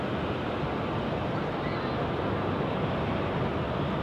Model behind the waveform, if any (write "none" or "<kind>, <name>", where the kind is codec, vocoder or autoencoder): none